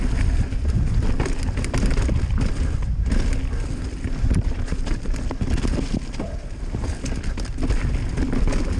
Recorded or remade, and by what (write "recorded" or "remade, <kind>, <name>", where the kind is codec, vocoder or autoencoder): recorded